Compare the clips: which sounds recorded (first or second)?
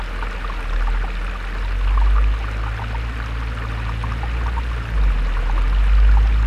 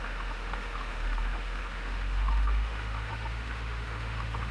first